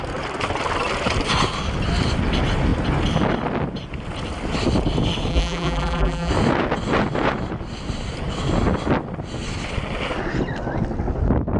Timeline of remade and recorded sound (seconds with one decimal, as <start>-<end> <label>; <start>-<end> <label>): 0.0-5.3 recorded; 5.3-6.3 remade; 6.3-11.6 recorded